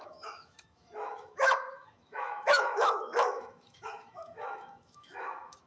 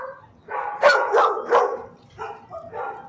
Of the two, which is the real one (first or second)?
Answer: second